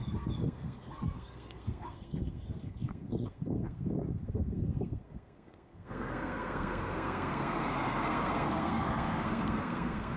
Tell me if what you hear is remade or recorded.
remade